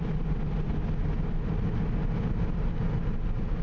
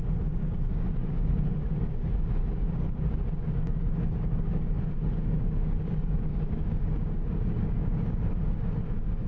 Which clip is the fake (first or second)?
second